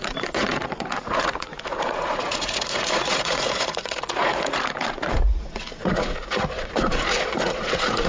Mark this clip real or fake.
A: fake